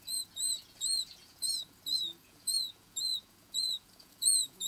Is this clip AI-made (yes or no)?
yes